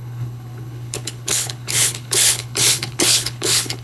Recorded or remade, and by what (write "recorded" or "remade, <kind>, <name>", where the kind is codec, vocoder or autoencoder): remade, codec, HILCodec